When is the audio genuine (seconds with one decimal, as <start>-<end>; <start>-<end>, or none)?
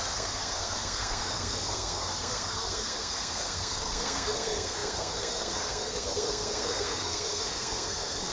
none